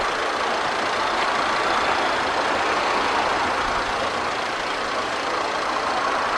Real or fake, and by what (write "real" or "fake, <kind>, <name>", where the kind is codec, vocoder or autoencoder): real